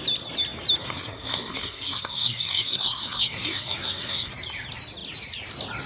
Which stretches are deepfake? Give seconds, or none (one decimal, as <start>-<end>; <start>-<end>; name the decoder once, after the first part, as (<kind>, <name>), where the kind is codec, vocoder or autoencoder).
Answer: 0.8-4.3 (codec, SNAC)